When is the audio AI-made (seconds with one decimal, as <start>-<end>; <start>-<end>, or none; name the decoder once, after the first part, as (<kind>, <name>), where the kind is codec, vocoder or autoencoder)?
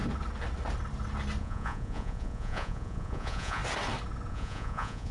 1.4-3.6 (vocoder, Vocos); 4.3-5.1